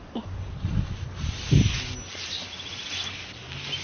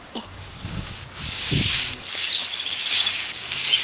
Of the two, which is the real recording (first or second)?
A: first